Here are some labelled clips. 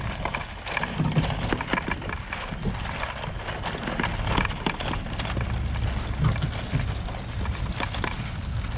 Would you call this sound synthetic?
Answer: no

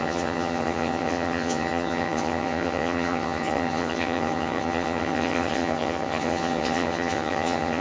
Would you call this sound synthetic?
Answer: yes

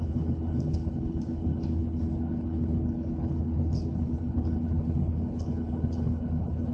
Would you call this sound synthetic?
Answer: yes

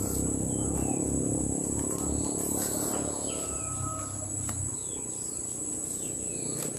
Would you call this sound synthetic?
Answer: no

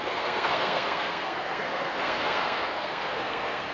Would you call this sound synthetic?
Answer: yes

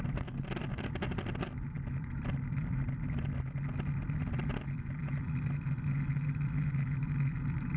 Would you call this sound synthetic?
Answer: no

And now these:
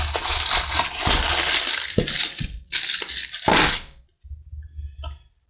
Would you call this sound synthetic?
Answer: no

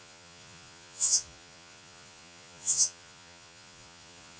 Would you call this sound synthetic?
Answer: yes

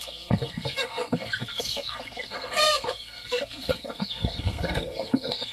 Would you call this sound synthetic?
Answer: yes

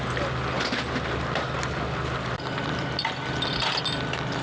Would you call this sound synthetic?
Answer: no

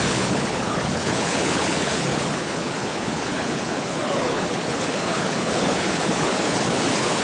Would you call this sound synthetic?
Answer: yes